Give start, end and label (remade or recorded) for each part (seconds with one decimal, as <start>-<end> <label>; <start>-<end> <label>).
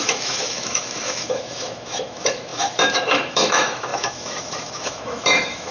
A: 0.0-5.7 remade